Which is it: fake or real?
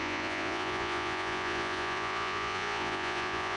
fake